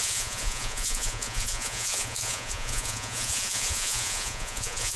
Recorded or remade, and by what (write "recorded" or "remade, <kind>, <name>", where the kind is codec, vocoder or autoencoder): remade, vocoder, Vocos